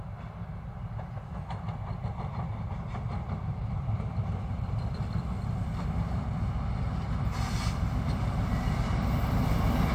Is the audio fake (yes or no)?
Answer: no